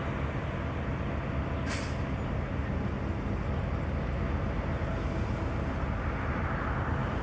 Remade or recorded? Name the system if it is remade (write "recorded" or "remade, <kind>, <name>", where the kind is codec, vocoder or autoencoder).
recorded